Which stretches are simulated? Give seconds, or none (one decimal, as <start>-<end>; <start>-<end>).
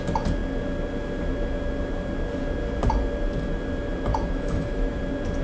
4.1-5.0